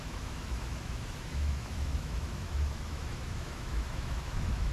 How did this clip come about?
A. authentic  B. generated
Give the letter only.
B